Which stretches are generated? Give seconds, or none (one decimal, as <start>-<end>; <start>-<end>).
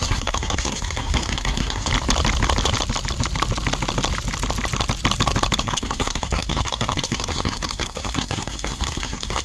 0.0-1.9; 5.6-9.4